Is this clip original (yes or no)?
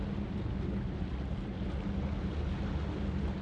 yes